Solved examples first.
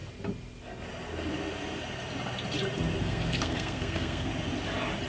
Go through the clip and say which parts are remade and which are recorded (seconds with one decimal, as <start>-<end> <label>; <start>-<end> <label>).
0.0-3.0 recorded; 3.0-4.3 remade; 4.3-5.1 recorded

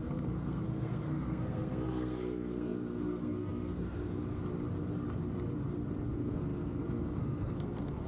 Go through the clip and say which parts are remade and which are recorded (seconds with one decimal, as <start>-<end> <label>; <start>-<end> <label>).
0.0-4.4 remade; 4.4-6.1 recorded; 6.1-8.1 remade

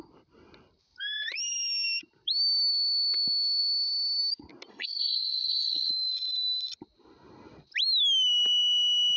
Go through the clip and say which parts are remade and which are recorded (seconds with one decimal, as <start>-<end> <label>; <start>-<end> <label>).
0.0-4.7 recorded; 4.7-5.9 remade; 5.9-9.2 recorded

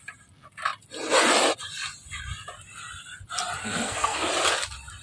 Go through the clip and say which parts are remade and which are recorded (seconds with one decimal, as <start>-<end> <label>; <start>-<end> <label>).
0.0-3.6 recorded; 3.6-4.3 remade; 4.3-5.0 recorded

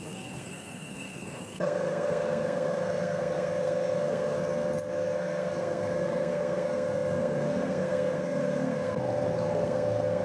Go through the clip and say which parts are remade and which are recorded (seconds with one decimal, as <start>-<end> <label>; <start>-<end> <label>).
0.0-10.2 remade

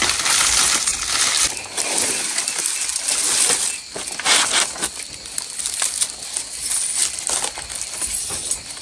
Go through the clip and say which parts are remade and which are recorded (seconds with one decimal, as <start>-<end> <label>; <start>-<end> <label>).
0.0-8.8 recorded

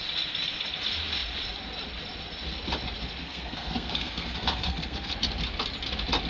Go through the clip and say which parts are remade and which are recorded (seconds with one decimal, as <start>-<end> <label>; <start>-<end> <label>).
0.0-3.2 recorded; 3.2-5.1 remade; 5.1-6.3 recorded

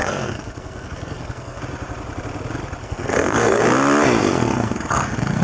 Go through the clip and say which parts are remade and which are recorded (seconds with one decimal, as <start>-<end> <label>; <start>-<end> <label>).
0.0-1.6 remade; 1.6-2.8 recorded; 2.8-3.6 remade; 3.6-4.2 recorded; 4.2-5.4 remade